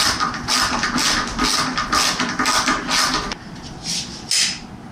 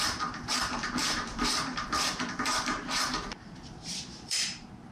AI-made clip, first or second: second